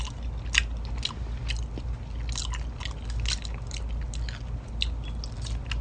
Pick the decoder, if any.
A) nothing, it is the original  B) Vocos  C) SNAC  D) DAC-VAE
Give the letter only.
A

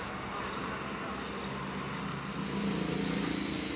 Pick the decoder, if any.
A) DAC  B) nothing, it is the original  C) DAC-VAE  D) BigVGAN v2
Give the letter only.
B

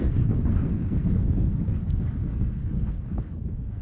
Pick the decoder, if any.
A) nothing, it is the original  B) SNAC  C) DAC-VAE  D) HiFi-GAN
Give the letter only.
B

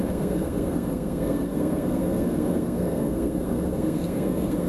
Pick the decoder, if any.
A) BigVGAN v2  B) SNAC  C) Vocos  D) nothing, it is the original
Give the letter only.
B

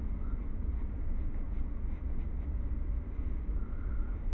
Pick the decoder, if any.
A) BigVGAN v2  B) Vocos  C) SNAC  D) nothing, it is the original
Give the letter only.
D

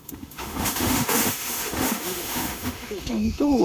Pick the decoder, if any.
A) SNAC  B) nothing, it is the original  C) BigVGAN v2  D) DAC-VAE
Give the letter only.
D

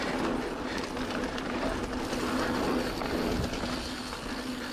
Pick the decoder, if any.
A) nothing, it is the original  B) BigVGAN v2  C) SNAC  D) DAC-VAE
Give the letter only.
A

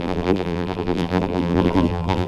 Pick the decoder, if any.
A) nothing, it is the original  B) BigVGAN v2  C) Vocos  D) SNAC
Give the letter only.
B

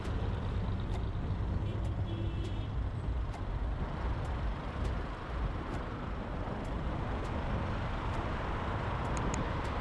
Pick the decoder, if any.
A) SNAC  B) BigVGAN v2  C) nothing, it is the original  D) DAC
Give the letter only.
B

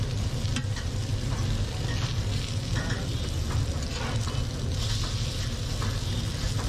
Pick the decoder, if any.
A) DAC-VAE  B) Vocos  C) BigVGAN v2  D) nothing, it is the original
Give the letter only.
D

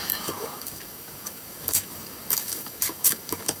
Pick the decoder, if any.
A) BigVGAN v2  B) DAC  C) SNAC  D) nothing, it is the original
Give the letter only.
B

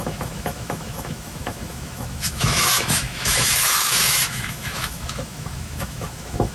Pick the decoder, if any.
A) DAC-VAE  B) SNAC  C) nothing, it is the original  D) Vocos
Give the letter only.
A